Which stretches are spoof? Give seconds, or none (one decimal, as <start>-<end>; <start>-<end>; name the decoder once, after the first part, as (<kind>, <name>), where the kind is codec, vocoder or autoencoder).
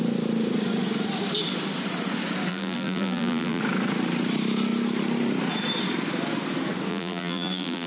2.5-3.6 (vocoder, BigVGAN v2); 6.9-7.9